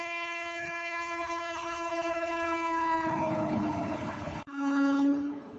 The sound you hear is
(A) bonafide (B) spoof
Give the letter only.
B